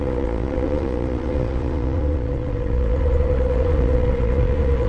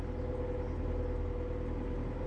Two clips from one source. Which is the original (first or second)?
second